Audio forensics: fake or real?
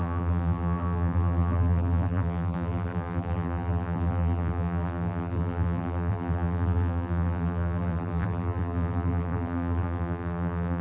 fake